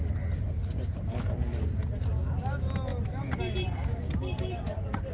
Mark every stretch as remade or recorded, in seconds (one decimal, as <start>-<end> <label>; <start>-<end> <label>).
0.0-5.1 recorded